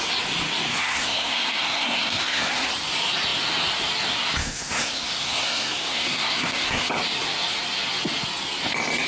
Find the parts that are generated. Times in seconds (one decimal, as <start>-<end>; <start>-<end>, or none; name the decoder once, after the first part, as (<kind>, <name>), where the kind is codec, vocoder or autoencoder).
0.7-2.7 (codec, SNAC); 4.4-6.9